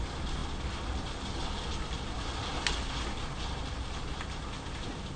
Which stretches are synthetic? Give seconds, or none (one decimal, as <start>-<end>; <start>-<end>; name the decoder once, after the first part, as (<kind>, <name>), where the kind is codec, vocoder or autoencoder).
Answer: none